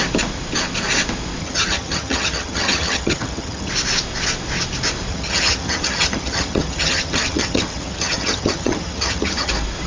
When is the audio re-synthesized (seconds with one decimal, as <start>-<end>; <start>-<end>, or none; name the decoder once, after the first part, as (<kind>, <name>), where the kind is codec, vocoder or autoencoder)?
1.4-3.7 (vocoder, HiFi-GAN); 5.1-9.5